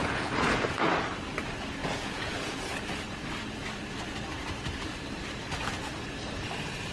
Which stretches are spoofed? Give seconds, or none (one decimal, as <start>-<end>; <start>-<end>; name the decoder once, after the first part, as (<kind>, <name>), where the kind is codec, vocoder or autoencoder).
0.0-0.9 (vocoder, Vocos); 1.8-2.6